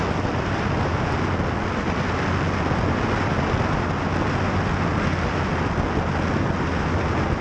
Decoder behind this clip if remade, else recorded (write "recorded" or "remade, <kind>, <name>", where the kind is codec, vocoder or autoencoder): recorded